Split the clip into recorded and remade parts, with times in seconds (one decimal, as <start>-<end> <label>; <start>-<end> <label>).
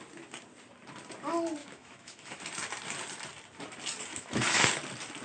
0.0-1.6 recorded; 1.6-2.4 remade; 2.4-4.1 recorded; 4.1-4.7 remade; 4.7-5.2 recorded